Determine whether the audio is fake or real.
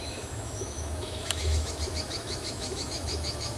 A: fake